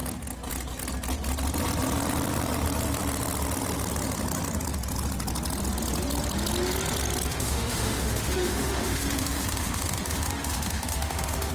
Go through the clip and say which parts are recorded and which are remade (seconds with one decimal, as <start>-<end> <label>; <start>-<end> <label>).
0.0-7.3 recorded; 7.3-11.5 remade